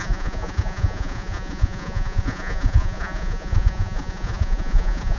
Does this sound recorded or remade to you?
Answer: remade